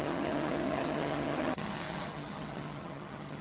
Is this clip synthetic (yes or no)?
yes